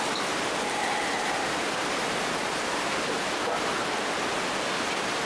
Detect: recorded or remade recorded